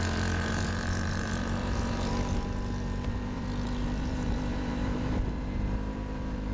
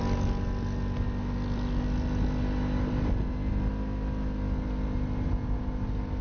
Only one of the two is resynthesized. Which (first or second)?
first